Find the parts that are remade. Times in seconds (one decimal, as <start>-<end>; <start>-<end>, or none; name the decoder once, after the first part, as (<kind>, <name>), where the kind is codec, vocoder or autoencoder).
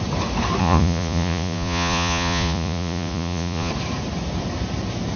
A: 0.6-3.7 (vocoder, Vocos)